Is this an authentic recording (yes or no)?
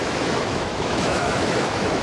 no